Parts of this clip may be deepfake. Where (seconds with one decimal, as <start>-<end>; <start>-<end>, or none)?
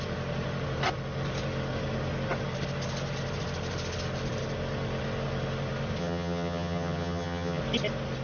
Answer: 6.0-7.6